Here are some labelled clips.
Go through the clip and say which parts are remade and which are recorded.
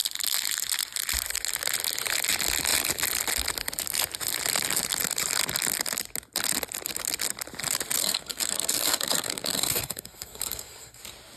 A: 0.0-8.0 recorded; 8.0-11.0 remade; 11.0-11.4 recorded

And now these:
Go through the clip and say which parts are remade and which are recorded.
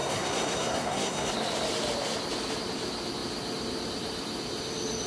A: 0.0-1.3 remade; 1.3-5.1 recorded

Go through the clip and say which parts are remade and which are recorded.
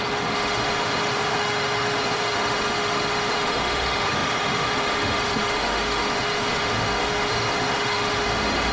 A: 0.0-8.7 remade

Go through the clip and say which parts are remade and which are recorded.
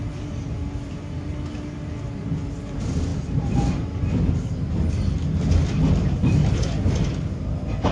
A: 0.0-7.9 recorded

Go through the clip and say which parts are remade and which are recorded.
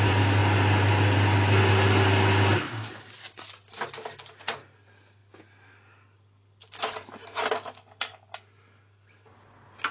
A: 0.0-9.9 recorded